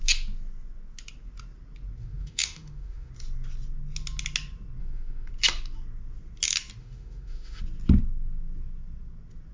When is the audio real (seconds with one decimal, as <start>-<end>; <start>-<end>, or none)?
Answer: 0.0-2.0; 3.1-4.8; 5.3-6.8; 7.6-9.5